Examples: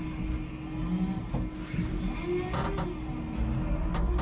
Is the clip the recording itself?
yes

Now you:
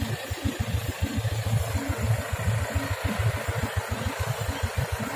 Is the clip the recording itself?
yes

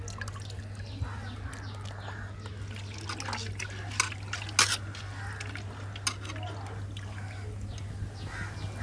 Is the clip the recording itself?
yes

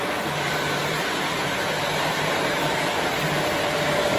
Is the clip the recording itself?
no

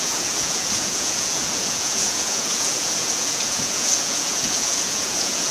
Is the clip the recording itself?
no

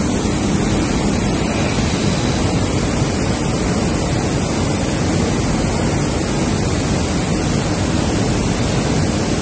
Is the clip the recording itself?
yes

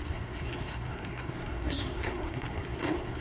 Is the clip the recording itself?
no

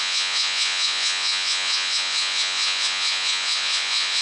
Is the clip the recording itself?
no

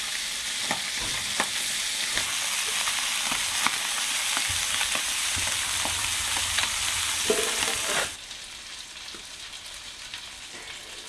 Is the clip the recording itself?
yes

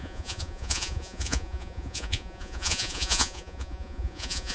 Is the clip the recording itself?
no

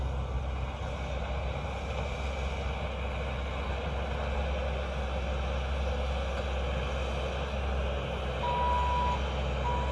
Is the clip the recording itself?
yes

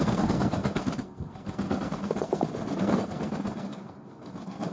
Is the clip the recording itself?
no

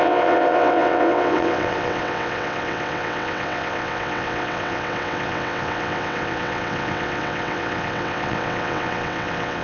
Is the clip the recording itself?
no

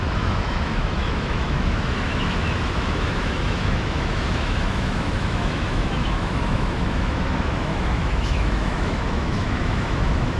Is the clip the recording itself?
no